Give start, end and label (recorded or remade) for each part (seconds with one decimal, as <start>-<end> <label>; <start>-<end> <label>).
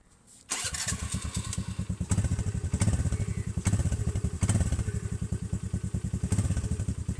0.0-7.2 recorded